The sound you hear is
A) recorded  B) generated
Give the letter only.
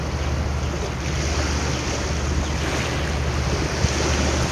A